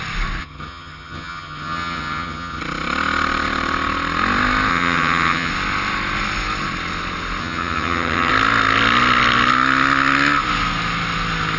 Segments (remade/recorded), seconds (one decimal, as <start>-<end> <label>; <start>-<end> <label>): 0.0-0.4 recorded; 0.4-2.6 remade; 2.6-4.7 recorded; 4.7-5.5 remade; 5.5-7.4 recorded; 7.4-8.3 remade; 8.3-11.6 recorded